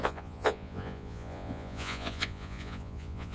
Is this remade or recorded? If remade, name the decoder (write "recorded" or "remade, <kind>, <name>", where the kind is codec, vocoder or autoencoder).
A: remade, vocoder, Vocos